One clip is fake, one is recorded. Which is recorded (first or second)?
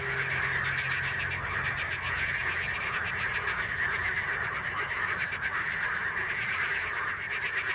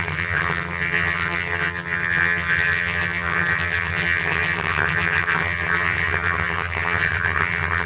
first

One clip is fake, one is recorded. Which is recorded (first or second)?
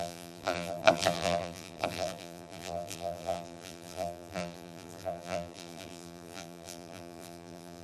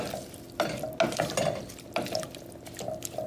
second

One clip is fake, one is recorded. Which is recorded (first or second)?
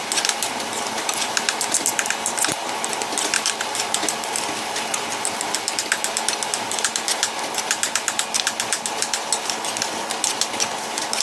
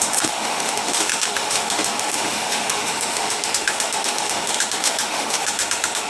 first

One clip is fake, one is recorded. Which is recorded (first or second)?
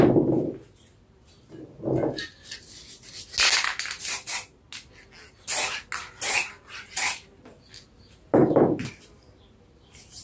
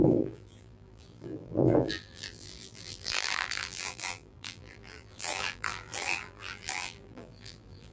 first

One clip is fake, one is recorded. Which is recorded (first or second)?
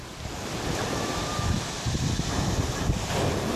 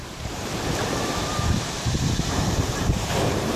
first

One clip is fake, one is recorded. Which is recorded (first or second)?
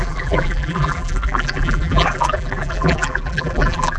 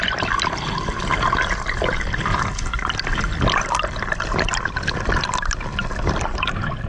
second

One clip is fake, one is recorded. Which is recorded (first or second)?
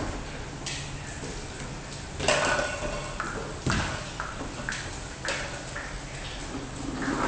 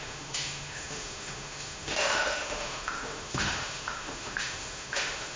first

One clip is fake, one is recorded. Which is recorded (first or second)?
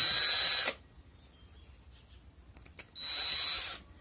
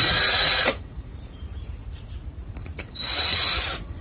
first